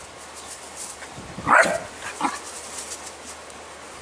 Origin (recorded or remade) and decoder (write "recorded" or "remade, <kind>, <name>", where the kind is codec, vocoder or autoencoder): recorded